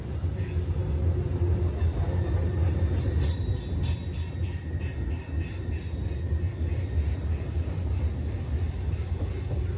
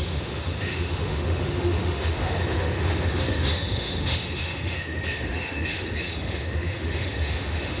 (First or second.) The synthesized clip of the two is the second